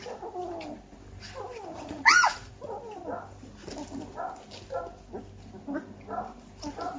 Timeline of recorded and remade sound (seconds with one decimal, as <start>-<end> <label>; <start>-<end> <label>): 0.0-1.7 recorded; 1.7-2.5 remade; 2.5-7.0 recorded